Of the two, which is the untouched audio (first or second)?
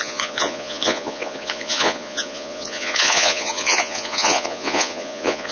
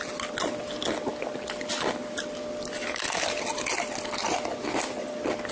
second